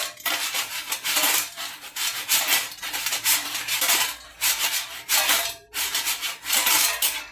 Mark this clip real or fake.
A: fake